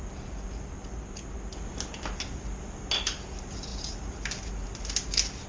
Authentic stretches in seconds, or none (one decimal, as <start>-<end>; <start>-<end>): 0.0-5.5